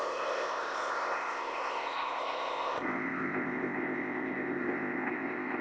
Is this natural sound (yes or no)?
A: no